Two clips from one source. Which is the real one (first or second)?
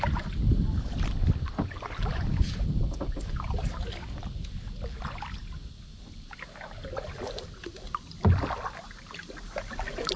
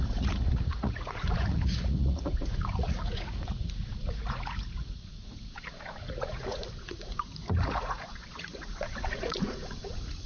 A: first